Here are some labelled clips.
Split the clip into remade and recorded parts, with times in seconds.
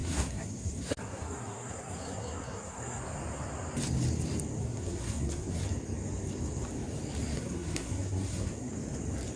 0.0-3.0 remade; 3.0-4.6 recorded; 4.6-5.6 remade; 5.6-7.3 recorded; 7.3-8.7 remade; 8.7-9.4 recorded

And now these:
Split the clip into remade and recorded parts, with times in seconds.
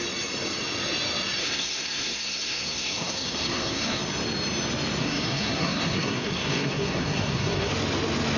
0.0-1.4 recorded; 1.4-4.0 remade; 4.0-5.0 recorded; 5.0-7.7 remade; 7.7-8.4 recorded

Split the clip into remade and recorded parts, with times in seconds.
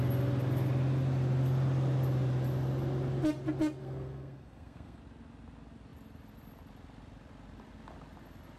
0.0-3.8 recorded; 3.8-5.0 remade; 5.0-8.6 recorded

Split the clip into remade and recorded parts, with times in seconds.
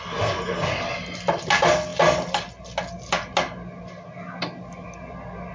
0.0-5.5 recorded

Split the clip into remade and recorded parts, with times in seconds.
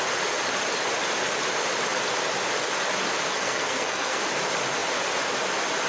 0.0-3.3 recorded; 3.3-4.2 remade; 4.2-5.9 recorded